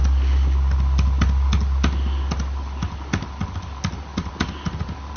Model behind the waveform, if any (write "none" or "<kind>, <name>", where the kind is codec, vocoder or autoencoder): none